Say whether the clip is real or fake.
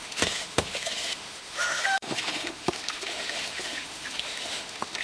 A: fake